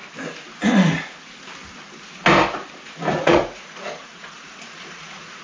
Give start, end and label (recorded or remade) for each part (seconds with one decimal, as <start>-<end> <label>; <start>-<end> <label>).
0.0-3.2 recorded; 3.2-5.4 remade